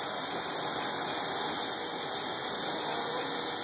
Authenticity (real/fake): real